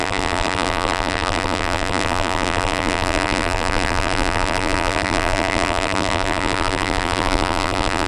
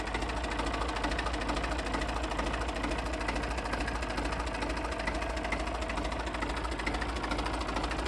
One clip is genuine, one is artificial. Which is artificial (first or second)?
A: first